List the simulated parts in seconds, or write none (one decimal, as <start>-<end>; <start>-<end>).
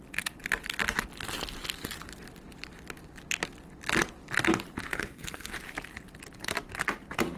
4.9-5.5